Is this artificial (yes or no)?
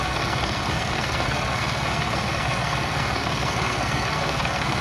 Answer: yes